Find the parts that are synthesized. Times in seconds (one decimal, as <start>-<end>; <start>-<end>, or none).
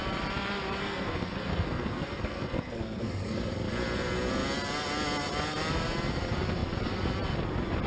0.8-3.4